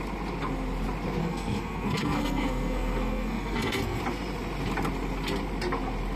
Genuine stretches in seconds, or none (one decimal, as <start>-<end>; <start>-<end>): 0.0-1.2; 4.0-6.2